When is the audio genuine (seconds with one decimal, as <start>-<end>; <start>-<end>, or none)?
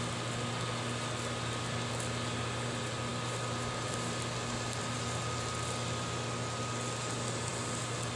0.0-8.2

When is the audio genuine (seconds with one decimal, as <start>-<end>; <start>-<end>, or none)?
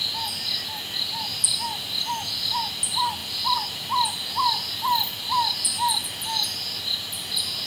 0.0-1.3; 2.6-3.2; 6.1-7.7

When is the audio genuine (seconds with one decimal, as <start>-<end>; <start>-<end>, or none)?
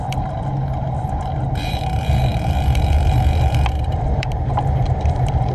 none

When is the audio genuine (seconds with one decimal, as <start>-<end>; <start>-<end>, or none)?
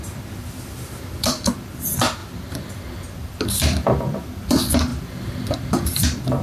2.2-3.2; 4.9-5.5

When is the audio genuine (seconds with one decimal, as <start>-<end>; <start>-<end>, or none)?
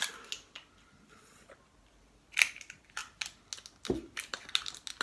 0.0-5.0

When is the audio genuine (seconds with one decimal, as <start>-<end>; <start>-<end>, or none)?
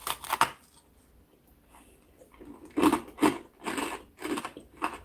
0.0-2.9; 4.4-5.0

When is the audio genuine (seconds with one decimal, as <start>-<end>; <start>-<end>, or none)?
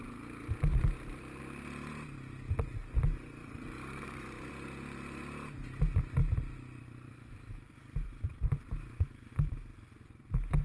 0.0-0.7; 1.4-3.4; 4.5-6.2; 9.3-10.6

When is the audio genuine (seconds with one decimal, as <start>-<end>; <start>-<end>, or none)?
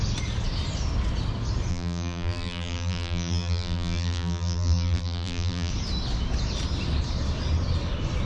0.0-1.7; 5.7-8.3